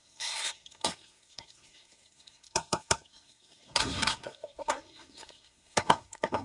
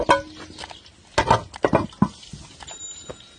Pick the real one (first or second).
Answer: second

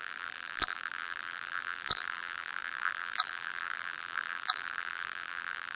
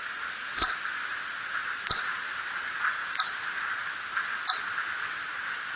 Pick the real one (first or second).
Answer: second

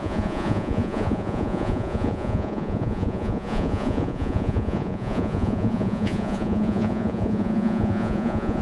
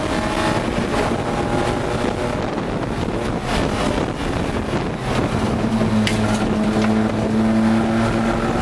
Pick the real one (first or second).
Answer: second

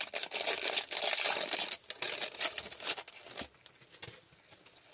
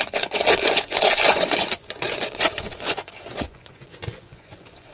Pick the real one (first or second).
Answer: first